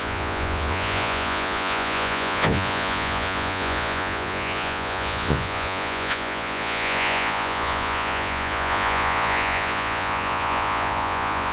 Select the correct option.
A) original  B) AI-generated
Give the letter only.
B